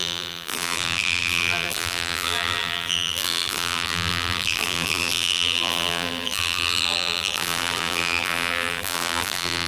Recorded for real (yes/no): no